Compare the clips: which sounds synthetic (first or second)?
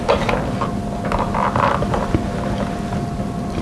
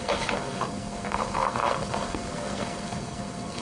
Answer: second